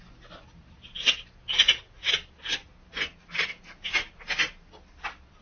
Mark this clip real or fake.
real